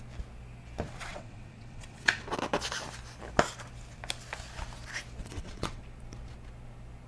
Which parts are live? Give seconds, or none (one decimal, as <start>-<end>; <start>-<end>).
0.0-1.1; 2.4-5.2; 5.8-7.1